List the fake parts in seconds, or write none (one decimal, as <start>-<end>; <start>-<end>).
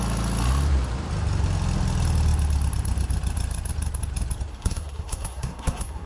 4.5-6.1